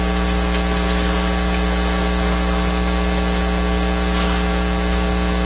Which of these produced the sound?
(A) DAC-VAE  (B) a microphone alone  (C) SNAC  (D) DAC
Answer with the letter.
B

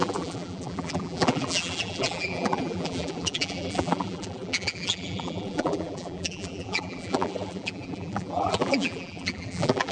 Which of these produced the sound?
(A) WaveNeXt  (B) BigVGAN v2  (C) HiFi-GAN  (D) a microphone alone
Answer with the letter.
B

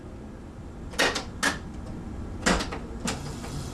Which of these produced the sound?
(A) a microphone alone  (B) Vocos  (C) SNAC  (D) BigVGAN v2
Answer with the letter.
A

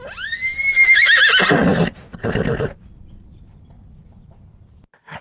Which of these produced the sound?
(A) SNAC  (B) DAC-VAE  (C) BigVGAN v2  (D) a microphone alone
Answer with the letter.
D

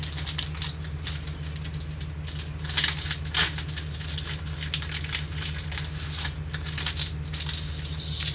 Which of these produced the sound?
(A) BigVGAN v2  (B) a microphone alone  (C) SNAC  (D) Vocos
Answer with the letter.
B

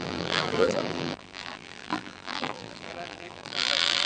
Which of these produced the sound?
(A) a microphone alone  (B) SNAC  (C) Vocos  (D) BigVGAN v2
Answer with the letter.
D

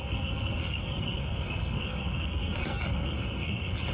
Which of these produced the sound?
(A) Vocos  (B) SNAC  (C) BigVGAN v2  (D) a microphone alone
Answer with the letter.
B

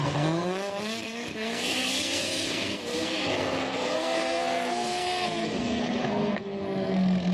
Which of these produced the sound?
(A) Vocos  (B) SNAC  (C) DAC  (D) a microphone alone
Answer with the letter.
B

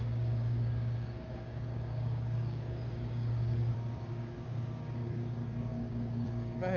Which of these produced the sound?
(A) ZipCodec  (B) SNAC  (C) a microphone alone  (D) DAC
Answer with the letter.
D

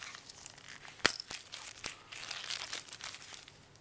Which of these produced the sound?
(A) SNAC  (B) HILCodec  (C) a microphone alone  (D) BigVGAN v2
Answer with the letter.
C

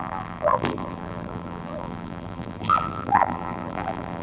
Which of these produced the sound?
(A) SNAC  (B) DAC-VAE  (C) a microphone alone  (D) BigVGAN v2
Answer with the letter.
D